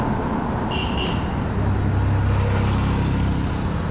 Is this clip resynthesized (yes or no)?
no